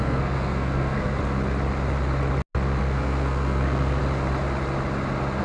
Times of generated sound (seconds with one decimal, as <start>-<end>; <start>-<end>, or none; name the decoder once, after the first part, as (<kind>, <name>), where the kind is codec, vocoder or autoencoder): 0.0-1.2 (codec, SNAC); 2.8-4.0